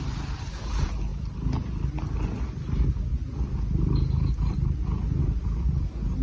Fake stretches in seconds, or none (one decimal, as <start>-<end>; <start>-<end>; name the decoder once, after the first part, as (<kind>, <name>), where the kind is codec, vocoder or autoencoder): none